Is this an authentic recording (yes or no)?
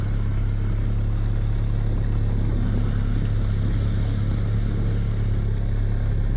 yes